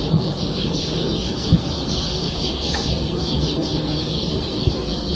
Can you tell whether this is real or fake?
fake